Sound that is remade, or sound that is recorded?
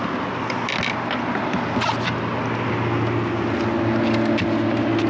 recorded